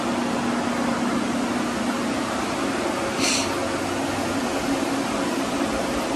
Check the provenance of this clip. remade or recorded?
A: recorded